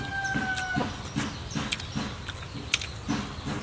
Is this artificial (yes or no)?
no